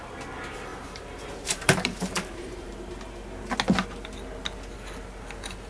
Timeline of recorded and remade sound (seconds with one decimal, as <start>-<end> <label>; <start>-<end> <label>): 0.0-0.7 recorded; 0.7-2.7 remade; 2.7-5.7 recorded